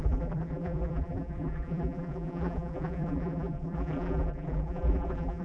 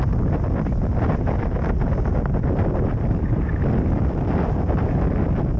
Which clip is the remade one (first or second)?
first